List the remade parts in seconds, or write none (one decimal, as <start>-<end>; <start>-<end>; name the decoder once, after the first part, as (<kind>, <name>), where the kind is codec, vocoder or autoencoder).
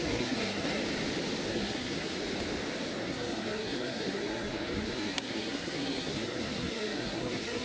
0.0-0.8 (codec, SNAC); 1.5-2.2; 3.0-7.6